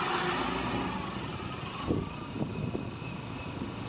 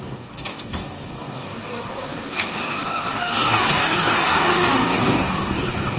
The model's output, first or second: second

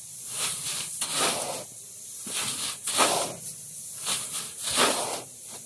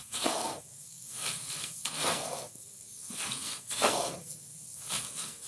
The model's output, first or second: second